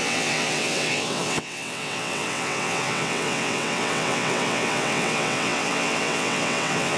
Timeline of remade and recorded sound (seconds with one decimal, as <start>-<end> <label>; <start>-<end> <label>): 0.0-7.0 remade